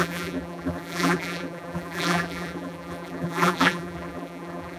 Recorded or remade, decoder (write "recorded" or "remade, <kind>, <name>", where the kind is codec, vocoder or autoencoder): remade, vocoder, BigVGAN v2